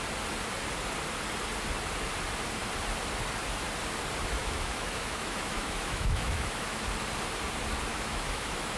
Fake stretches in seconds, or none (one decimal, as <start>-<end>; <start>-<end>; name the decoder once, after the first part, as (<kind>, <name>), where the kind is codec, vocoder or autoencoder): 4.4-6.8 (autoencoder, DAC-VAE); 7.9-8.8